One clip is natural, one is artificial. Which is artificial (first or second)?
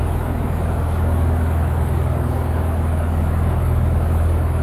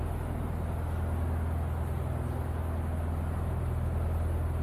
first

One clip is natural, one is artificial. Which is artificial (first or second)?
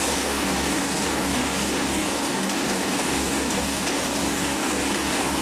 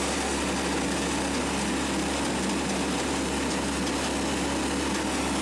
first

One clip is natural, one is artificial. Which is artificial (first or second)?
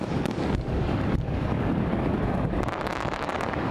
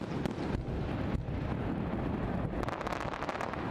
first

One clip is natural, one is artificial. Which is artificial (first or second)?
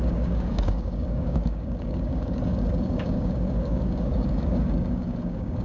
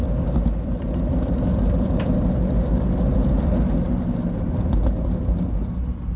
first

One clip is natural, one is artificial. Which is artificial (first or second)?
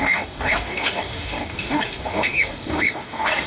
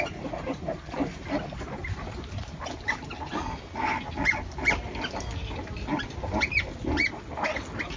first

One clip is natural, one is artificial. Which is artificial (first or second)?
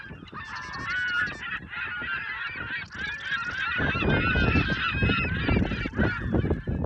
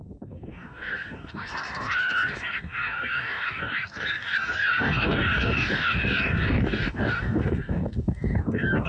second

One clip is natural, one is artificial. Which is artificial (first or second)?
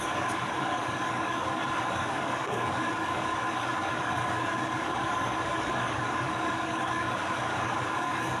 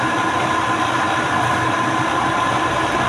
first